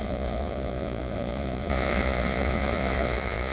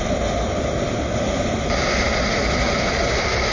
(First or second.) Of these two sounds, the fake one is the first